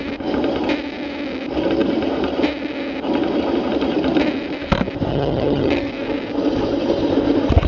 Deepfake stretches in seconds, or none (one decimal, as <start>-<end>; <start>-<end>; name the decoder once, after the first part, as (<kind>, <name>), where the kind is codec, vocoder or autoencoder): 5.1-5.9 (vocoder, HiFi-GAN)